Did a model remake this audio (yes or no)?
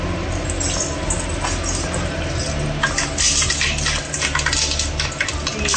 no